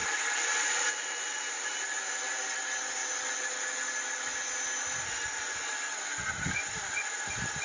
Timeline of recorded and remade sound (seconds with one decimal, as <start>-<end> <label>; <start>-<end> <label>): 0.0-7.6 recorded